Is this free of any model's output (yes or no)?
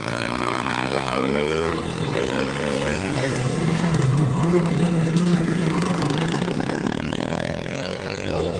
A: no